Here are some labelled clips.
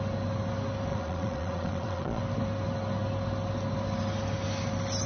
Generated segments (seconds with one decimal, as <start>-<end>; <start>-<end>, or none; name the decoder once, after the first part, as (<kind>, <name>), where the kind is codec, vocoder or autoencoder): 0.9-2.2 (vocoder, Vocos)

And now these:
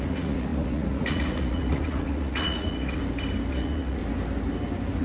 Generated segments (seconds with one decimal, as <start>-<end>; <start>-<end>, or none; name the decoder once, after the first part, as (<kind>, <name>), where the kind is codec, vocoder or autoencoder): 0.0-3.0 (vocoder, Vocos); 3.5-4.0

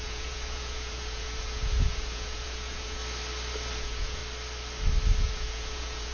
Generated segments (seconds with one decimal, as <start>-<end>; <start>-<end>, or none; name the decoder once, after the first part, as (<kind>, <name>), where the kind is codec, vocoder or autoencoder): 0.0-3.0 (vocoder, Vocos); 3.8-4.2; 5.2-6.1